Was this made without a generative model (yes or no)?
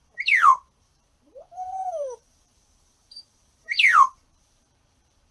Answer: no